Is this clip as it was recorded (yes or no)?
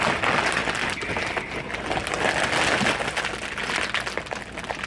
yes